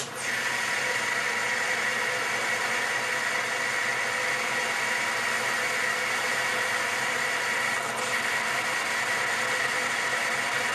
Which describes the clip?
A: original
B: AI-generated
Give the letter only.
A